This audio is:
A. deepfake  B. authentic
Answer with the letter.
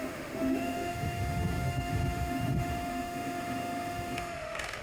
A